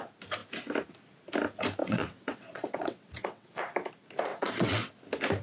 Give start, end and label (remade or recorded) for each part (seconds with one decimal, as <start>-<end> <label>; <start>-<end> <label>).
0.0-1.8 recorded; 1.8-3.6 remade; 3.6-4.3 recorded; 4.3-4.9 remade; 4.9-5.4 recorded